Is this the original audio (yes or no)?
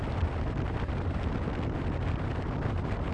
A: yes